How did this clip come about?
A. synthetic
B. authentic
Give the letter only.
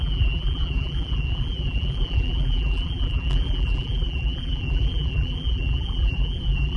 A